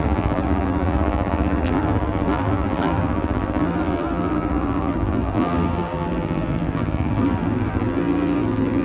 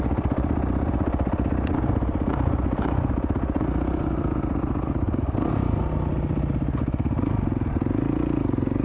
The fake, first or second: first